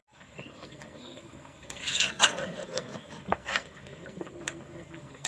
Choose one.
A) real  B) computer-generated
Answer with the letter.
B